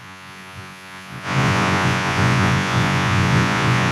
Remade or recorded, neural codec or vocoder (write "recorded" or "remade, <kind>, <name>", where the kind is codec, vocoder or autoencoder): remade, vocoder, Vocos